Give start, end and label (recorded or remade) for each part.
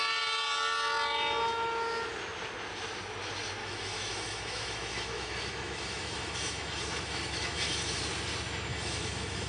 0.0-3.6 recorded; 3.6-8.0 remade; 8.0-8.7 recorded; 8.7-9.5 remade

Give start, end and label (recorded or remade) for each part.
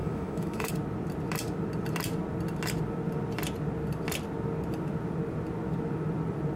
0.0-0.7 remade; 0.7-6.6 recorded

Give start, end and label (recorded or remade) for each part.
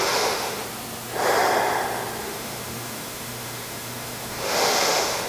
0.0-0.6 remade; 0.6-2.2 recorded; 2.2-5.3 remade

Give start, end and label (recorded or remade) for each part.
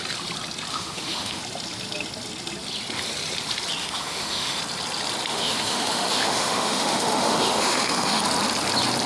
0.0-0.7 recorded; 0.7-1.4 remade; 1.4-3.8 recorded; 3.8-4.6 remade; 4.6-5.3 recorded; 5.3-8.2 remade; 8.2-9.1 recorded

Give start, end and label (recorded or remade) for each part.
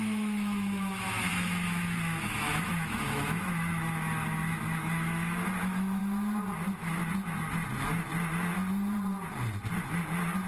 0.0-6.0 remade; 6.0-10.5 recorded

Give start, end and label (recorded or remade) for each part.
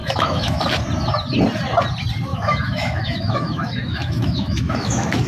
0.0-0.6 remade; 0.6-2.3 recorded; 2.3-5.3 remade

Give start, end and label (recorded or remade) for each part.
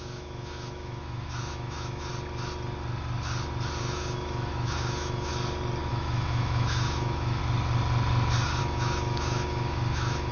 0.0-2.1 remade; 2.1-3.8 recorded; 3.8-5.3 remade; 5.3-5.9 recorded; 5.9-7.4 remade; 7.4-8.6 recorded; 8.6-10.3 remade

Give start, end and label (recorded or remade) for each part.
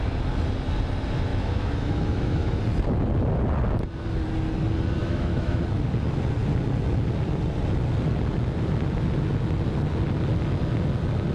0.0-1.3 recorded; 1.3-2.6 remade; 2.6-5.0 recorded; 5.0-5.6 remade; 5.6-11.3 recorded